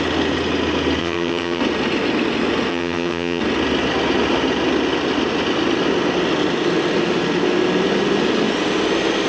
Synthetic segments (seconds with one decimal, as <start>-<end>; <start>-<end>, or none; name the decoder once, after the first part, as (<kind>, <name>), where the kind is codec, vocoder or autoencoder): 1.0-1.6 (vocoder, HiFi-GAN); 2.7-3.4